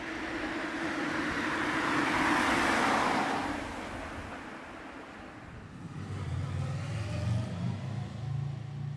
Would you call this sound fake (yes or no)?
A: no